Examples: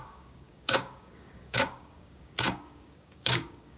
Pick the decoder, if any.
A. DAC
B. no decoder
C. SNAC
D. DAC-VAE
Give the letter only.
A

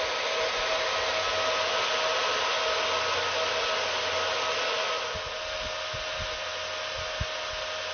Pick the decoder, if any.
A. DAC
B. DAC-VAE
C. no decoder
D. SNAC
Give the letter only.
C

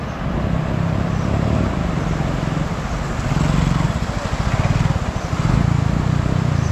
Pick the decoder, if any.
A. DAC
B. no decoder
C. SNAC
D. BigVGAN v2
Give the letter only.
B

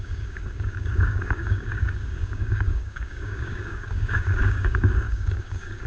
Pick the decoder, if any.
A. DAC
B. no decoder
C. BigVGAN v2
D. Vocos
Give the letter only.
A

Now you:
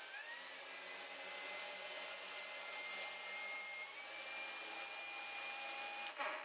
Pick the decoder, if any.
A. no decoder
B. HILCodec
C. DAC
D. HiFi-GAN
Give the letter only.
A